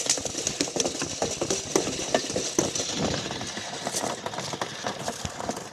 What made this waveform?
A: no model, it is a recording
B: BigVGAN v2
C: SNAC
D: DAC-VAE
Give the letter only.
A